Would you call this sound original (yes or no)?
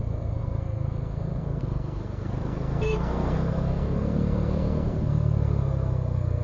no